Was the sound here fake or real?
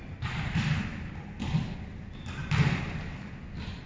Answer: real